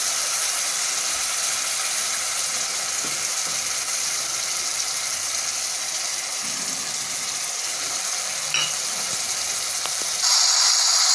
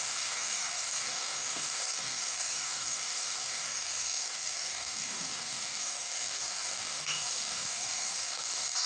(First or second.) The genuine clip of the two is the first